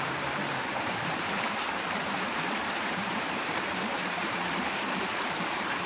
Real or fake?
fake